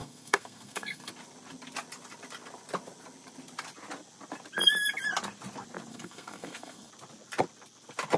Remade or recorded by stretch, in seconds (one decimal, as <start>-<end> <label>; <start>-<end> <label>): 0.0-1.1 remade; 1.1-5.9 recorded; 5.9-6.9 remade; 6.9-8.2 recorded